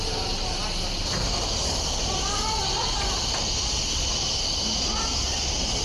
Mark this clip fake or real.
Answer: real